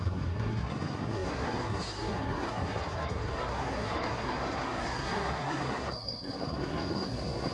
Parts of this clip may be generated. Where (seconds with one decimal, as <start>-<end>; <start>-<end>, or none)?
0.0-7.5